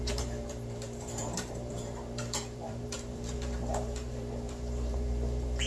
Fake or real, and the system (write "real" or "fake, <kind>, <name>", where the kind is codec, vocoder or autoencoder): fake, vocoder, BigVGAN v2